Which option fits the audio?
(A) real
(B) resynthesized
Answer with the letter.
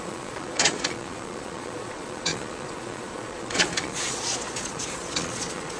B